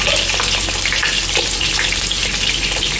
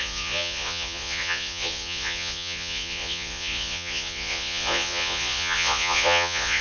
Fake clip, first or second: second